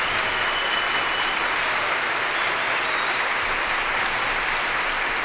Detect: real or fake fake